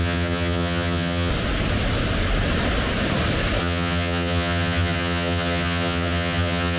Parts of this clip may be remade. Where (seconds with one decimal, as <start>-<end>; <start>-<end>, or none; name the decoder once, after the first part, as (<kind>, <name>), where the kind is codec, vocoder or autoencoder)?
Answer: 0.0-1.3 (vocoder, HiFi-GAN); 3.6-6.8